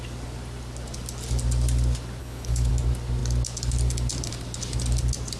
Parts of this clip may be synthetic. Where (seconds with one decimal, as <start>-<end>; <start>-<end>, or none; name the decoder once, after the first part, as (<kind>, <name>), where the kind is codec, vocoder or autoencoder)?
2.2-2.7 (codec, HILCodec)